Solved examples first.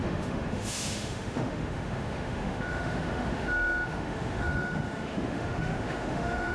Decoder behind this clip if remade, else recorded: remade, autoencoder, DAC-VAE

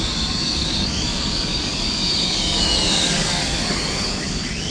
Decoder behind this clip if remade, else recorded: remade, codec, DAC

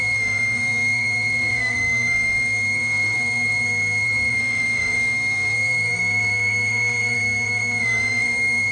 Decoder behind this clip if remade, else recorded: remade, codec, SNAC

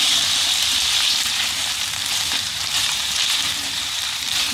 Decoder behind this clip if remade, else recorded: remade, vocoder, BigVGAN v2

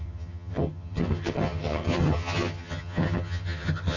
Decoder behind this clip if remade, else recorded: remade, vocoder, HiFi-GAN